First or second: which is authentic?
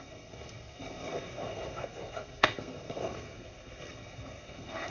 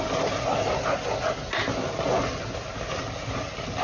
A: second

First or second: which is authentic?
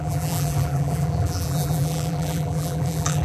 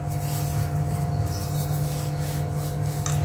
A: second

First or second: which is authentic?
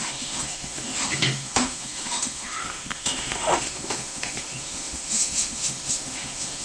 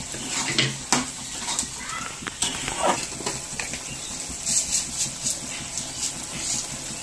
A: second